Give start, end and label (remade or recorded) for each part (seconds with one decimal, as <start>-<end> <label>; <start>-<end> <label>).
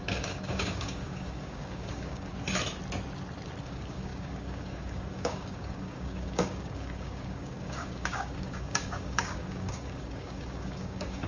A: 0.0-2.3 remade; 2.3-3.6 recorded; 3.6-11.3 remade